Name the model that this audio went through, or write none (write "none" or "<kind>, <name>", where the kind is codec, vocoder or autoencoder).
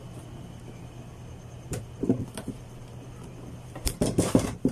none